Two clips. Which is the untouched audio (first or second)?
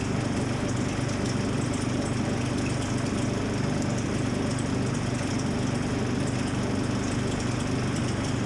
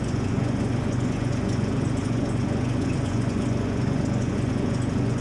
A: first